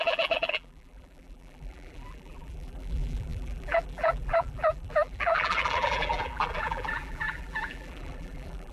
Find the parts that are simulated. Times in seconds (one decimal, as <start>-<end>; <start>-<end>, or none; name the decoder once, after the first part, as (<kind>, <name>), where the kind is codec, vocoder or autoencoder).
0.0-8.7 (vocoder, BigVGAN v2)

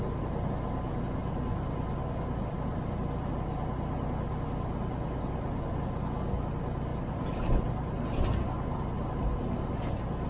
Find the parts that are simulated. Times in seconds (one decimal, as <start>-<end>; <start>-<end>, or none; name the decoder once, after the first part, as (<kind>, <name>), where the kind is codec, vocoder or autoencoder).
6.9-7.6 (vocoder, BigVGAN v2)

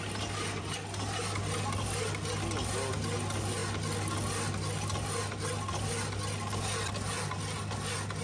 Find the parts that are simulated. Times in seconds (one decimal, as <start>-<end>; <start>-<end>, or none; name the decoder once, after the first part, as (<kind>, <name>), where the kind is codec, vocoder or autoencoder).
none

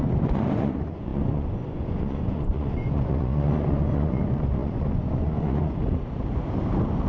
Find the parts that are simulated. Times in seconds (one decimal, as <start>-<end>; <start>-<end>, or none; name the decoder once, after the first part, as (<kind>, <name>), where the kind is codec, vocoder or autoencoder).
0.0-5.8 (vocoder, Vocos)

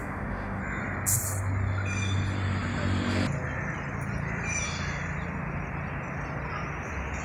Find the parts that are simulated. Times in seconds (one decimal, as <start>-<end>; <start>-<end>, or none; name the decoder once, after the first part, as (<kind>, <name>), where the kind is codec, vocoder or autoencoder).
0.0-0.6 (autoencoder, DAC-VAE)

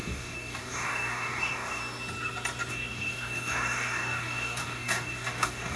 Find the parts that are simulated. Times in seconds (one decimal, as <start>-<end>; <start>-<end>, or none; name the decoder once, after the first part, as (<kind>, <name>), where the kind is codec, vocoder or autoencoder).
0.0-1.8 (codec, DAC); 2.7-5.8